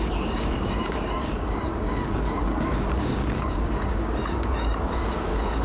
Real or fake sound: fake